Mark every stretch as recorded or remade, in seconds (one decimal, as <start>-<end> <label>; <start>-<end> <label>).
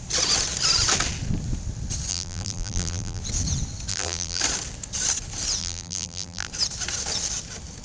0.0-2.1 recorded; 2.1-3.2 remade; 3.2-3.9 recorded; 3.9-4.4 remade; 4.4-5.6 recorded; 5.6-6.5 remade; 6.5-7.8 recorded